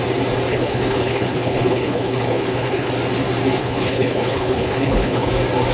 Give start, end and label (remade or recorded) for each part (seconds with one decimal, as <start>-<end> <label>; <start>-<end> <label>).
0.0-0.5 recorded; 0.5-2.9 remade; 2.9-3.6 recorded; 3.6-5.3 remade; 5.3-5.7 recorded